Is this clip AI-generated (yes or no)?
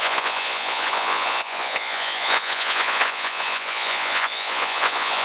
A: yes